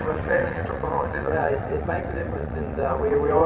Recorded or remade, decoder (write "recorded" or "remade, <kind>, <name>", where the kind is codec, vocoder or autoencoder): remade, vocoder, WaveNeXt